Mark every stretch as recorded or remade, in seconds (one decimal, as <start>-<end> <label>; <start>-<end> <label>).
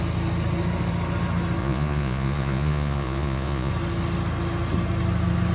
0.0-1.6 recorded; 1.6-3.7 remade; 3.7-5.5 recorded